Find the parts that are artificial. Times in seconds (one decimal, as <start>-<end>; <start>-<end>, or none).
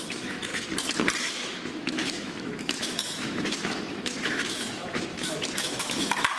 0.0-0.5; 1.2-6.4